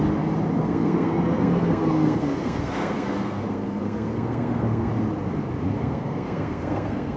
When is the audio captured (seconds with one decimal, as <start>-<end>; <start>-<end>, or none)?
0.0-0.6; 4.9-5.7